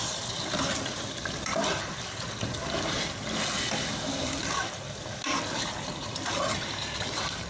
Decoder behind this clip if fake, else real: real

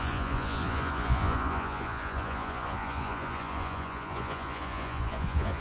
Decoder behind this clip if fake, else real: fake, vocoder, Vocos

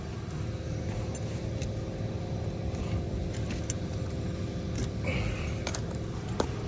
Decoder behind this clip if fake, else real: real